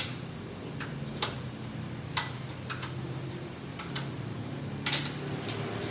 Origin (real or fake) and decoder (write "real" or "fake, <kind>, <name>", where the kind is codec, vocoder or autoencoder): real